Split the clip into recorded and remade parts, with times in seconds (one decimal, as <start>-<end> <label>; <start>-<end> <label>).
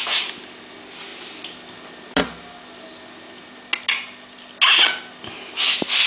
0.0-6.1 recorded